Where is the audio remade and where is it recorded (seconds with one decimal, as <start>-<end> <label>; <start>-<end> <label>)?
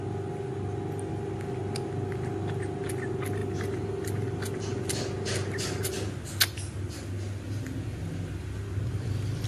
0.0-9.5 recorded